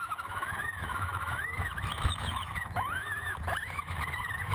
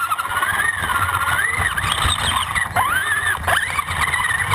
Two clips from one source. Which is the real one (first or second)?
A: second